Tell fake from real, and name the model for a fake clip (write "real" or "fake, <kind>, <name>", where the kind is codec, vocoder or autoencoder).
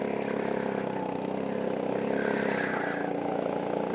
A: real